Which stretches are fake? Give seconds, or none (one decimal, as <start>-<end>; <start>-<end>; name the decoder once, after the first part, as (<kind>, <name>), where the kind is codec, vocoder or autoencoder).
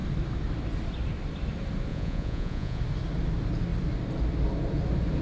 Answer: 1.9-2.8 (vocoder, Vocos)